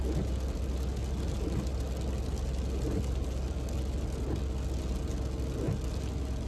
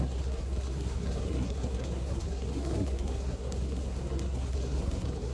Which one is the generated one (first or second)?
second